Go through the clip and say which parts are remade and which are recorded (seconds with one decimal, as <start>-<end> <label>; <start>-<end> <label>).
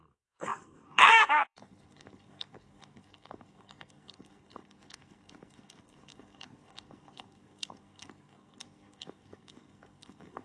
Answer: 0.0-10.4 remade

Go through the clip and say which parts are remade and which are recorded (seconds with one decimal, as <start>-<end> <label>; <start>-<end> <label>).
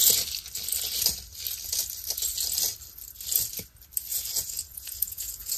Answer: 0.0-4.1 recorded; 4.1-5.6 remade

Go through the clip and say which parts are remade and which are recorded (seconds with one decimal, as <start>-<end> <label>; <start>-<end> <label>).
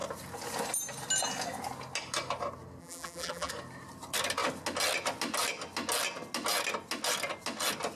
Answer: 0.0-2.8 recorded; 2.8-3.5 remade; 3.5-8.0 recorded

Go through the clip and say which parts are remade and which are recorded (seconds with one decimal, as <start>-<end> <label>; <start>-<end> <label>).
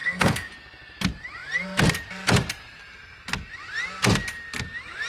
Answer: 0.0-0.5 remade; 0.5-5.1 recorded